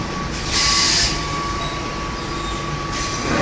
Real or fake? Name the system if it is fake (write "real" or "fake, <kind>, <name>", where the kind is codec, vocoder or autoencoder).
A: real